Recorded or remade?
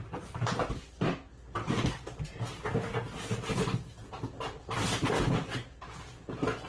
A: recorded